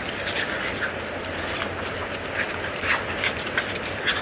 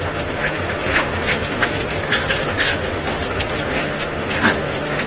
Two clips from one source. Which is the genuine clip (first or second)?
first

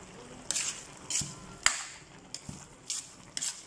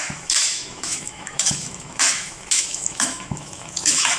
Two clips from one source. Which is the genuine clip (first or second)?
first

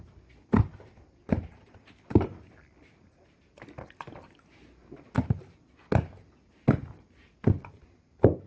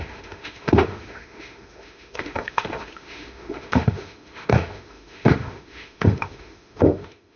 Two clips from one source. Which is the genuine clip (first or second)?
first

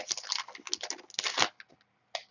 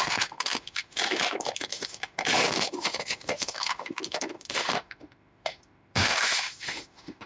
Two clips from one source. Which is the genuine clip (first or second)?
first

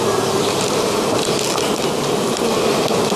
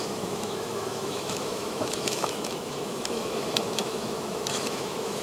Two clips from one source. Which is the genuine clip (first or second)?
first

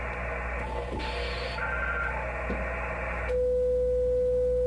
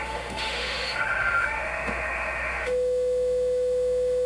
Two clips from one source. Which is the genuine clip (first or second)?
first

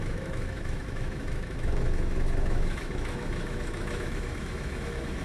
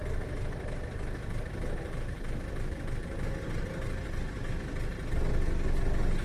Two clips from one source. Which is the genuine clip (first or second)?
second